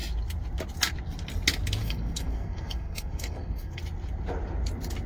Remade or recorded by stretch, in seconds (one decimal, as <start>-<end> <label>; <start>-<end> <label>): 0.0-1.8 recorded; 1.8-3.8 remade; 3.8-5.1 recorded